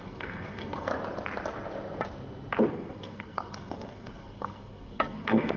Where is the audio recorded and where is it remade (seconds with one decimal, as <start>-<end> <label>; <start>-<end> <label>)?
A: 0.0-0.9 remade; 0.9-2.7 recorded; 2.7-5.6 remade